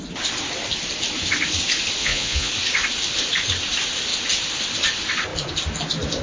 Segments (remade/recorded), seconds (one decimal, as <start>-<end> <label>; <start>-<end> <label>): 0.0-2.0 recorded; 2.0-2.5 remade; 2.5-6.2 recorded

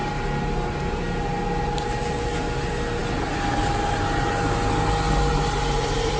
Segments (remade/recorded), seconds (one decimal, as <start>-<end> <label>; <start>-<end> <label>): 0.0-6.2 recorded

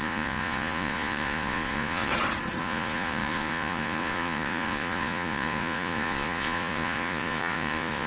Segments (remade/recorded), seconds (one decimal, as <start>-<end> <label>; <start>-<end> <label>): 0.0-2.1 remade; 2.1-2.6 recorded; 2.6-8.1 remade

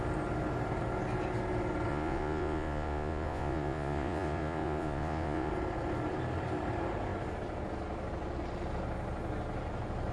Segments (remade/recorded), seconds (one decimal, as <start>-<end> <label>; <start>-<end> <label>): 0.0-1.9 recorded; 1.9-5.5 remade; 5.5-10.1 recorded

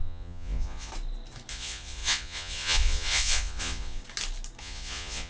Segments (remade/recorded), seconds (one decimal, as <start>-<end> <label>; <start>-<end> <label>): 0.0-0.9 remade; 0.9-1.5 recorded; 1.5-4.0 remade; 4.0-4.6 recorded; 4.6-5.3 remade